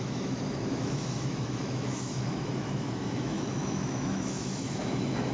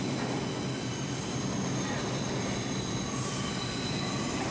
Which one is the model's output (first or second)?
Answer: first